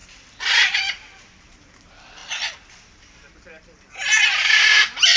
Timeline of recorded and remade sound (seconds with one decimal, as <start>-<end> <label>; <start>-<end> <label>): 0.0-5.2 recorded